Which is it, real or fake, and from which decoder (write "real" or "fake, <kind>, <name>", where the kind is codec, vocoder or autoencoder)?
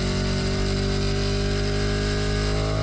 real